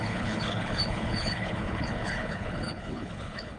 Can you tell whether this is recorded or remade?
remade